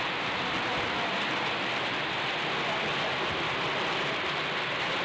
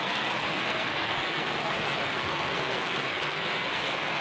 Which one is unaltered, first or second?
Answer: first